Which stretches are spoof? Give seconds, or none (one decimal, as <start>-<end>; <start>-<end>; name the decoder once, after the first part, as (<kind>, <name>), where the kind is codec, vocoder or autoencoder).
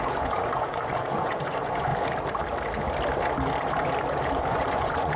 0.0-1.9 (vocoder, Vocos); 4.5-5.2